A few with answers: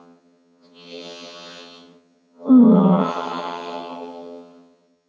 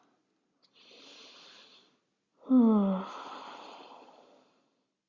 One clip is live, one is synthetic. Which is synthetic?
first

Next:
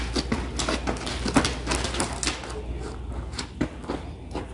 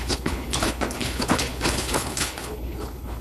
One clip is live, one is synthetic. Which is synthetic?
second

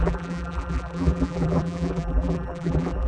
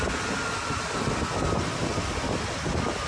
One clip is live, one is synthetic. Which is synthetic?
first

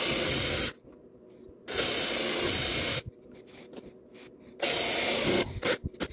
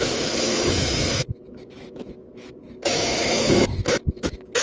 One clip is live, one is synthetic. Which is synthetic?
second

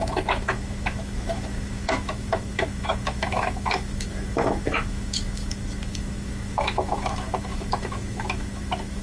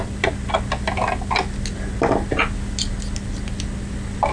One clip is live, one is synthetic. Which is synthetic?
first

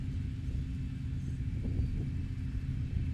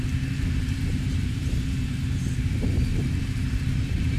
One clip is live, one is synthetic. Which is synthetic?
second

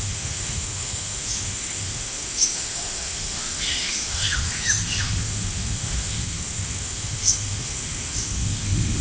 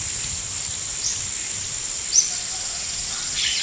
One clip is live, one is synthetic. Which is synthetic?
first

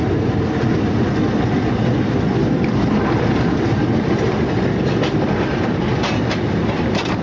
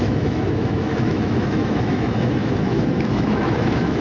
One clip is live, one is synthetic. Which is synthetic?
second